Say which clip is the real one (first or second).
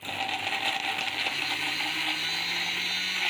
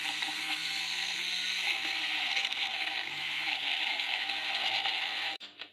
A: first